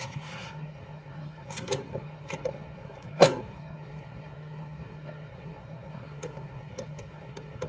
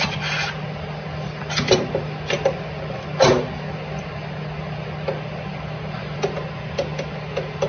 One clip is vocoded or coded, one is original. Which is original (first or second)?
second